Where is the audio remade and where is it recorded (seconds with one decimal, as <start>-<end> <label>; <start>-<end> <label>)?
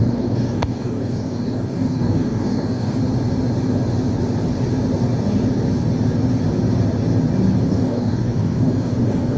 0.0-3.0 remade; 3.0-7.6 recorded; 7.6-9.4 remade